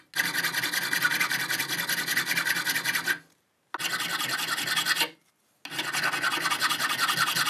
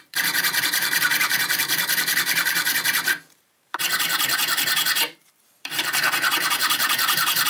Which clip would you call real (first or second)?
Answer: first